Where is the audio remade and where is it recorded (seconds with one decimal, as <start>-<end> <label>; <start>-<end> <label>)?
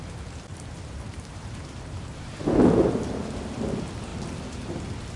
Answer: 0.0-0.5 recorded; 0.5-2.3 remade; 2.3-5.2 recorded